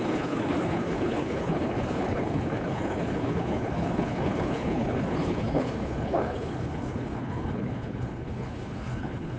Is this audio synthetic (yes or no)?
yes